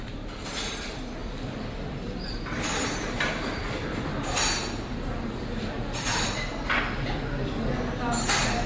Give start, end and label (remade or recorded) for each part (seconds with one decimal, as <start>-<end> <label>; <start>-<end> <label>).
0.0-4.1 remade; 4.1-5.7 recorded; 5.7-6.5 remade; 6.5-8.7 recorded